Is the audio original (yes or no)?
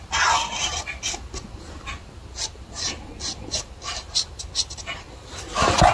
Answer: yes